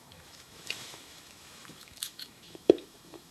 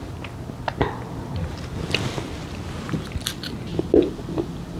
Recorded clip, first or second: second